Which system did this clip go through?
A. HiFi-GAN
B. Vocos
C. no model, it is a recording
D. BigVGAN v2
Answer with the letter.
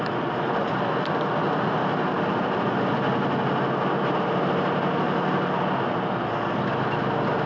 C